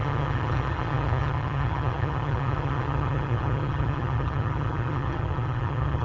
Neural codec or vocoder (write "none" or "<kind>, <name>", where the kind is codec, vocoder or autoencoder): vocoder, HiFi-GAN